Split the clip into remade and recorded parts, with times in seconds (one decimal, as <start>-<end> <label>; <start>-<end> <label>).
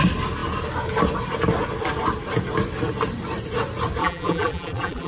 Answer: 0.0-4.0 recorded; 4.0-5.1 remade